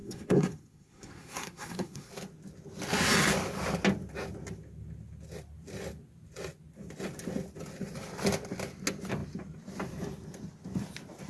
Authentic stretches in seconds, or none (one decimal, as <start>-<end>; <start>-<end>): 2.1-11.3